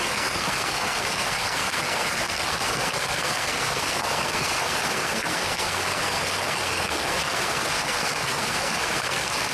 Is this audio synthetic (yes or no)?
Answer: yes